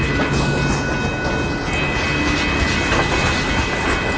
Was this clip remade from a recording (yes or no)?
no